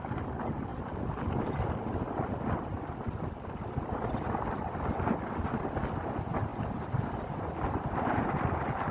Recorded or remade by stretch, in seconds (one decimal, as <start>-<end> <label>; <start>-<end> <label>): 0.0-8.9 recorded